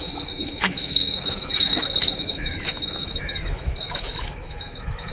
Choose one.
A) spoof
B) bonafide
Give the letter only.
A